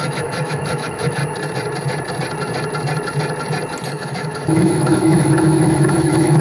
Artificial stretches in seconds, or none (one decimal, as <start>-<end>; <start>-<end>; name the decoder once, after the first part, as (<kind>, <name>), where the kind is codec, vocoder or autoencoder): 0.0-1.2 (autoencoder, DAC-VAE); 3.9-6.4